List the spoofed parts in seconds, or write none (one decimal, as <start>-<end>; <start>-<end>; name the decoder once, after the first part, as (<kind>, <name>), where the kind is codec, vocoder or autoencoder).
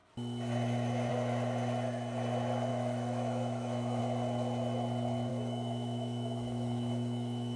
2.7-4.0 (autoencoder, DAC-VAE); 5.3-7.6